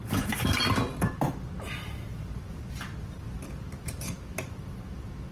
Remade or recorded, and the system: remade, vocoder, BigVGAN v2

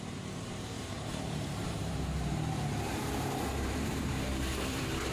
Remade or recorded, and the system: remade, vocoder, BigVGAN v2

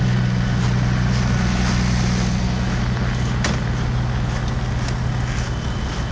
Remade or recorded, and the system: recorded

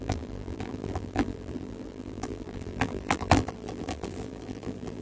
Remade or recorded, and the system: remade, vocoder, BigVGAN v2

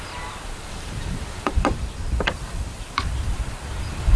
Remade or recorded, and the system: remade, vocoder, BigVGAN v2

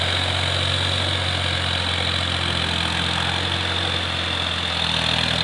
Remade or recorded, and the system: recorded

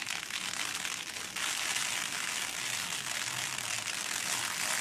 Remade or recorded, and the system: recorded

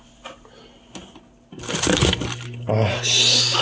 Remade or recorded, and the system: recorded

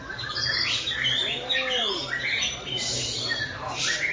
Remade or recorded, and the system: remade, vocoder, BigVGAN v2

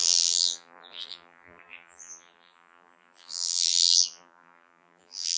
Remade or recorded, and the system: remade, vocoder, BigVGAN v2